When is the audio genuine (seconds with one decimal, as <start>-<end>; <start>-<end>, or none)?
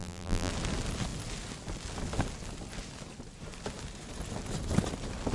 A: 0.5-5.3